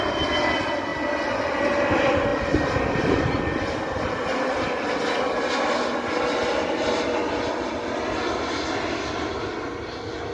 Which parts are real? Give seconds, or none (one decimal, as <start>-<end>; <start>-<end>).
0.0-2.3; 4.1-10.3